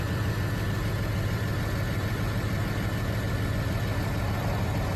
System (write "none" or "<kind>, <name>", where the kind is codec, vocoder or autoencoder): none